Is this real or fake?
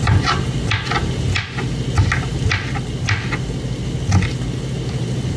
real